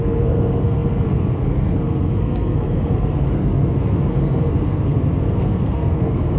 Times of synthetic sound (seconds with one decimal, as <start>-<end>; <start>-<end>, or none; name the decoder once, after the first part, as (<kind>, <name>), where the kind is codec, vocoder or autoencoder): 0.0-6.4 (codec, SNAC)